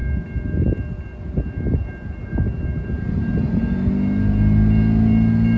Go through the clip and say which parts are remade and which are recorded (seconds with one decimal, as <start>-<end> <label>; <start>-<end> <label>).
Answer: 0.0-5.6 recorded